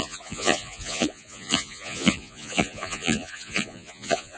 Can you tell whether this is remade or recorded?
remade